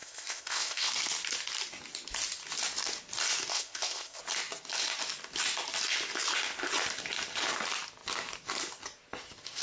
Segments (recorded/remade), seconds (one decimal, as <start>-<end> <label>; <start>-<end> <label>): 0.0-0.9 remade; 0.9-3.5 recorded; 3.5-4.2 remade; 4.2-9.6 recorded